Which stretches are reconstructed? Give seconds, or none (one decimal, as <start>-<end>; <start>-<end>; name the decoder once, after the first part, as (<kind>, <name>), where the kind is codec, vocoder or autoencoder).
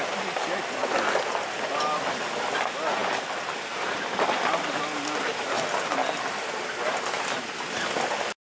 none